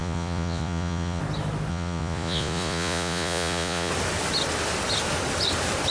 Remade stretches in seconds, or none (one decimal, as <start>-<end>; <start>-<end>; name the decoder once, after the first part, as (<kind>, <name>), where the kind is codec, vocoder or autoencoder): 0.0-1.2 (vocoder, Vocos); 1.7-3.9